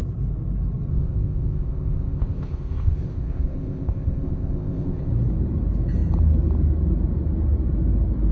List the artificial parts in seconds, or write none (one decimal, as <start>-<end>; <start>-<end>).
0.9-5.1